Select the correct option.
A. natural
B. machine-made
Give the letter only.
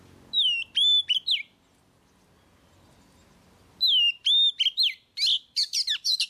A